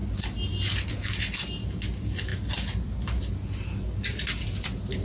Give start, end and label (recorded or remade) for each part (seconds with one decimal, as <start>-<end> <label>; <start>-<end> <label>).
0.0-5.0 recorded